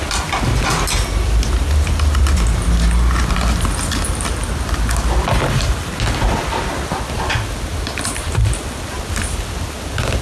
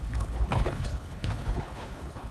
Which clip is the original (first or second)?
first